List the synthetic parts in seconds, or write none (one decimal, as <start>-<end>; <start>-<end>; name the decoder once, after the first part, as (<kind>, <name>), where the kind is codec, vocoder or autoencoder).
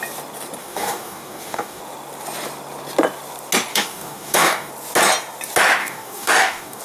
0.6-1.8 (codec, DAC); 3.7-4.7; 5.8-6.8